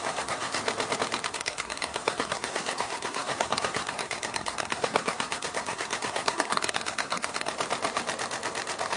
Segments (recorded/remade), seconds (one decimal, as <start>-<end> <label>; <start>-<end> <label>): 0.0-0.6 remade; 0.6-1.3 recorded; 1.3-7.5 remade; 7.5-9.0 recorded